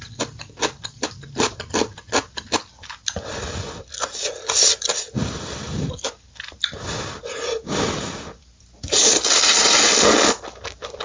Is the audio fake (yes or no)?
no